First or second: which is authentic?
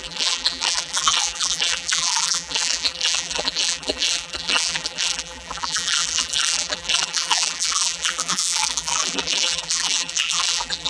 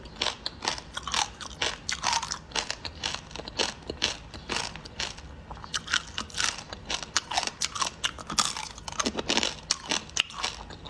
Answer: second